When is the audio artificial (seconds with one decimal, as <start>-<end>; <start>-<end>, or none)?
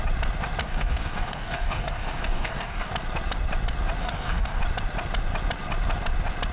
0.6-2.9; 4.0-4.6